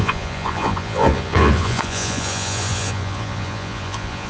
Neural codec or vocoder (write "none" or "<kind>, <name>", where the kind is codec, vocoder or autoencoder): vocoder, Vocos